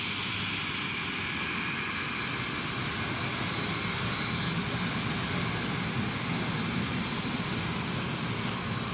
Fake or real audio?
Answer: real